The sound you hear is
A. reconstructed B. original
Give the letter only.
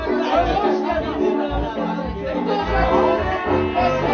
B